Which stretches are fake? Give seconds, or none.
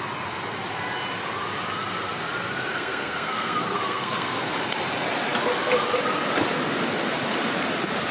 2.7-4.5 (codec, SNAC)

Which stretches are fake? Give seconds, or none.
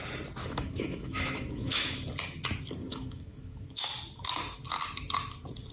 0.4-2.1 (autoencoder, DAC-VAE); 2.9-3.9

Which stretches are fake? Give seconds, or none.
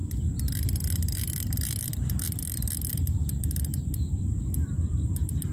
2.9-5.5 (vocoder, BigVGAN v2)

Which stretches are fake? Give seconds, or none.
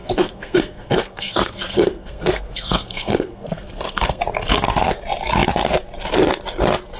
0.0-4.2 (codec, SNAC)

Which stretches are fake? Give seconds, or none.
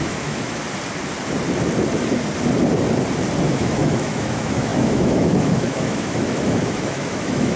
0.0-0.6 (autoencoder, DAC-VAE); 3.5-7.6